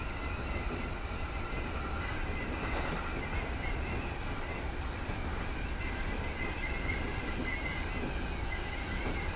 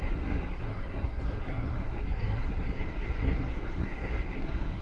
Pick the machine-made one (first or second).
second